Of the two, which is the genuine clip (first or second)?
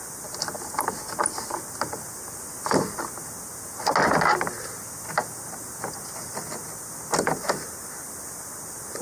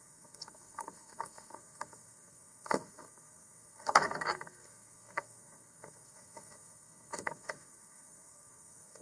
first